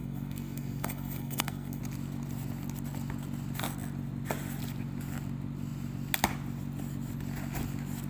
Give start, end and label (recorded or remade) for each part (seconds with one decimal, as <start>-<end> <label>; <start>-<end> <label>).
0.0-1.8 remade; 1.8-8.1 recorded